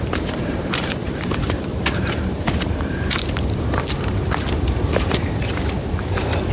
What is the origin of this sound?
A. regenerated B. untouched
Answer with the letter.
A